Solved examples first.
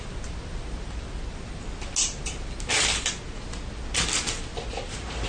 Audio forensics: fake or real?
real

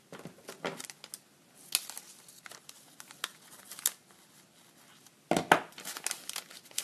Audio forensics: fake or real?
real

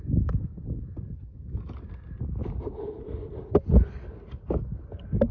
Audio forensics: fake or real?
real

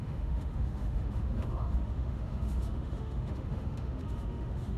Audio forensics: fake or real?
fake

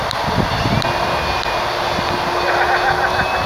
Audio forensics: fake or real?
real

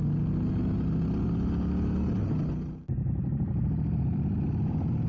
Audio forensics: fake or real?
real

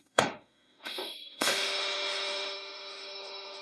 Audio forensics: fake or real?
fake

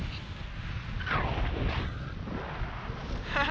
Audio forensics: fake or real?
real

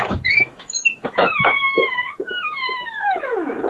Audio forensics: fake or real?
fake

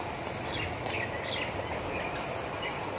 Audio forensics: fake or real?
real